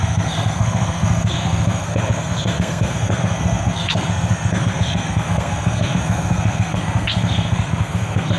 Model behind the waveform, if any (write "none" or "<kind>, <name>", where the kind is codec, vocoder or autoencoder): codec, SNAC